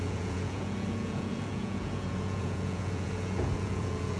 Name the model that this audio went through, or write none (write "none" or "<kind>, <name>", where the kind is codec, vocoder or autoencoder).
vocoder, Vocos